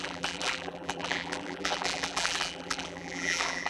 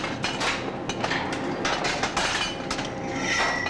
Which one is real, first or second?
second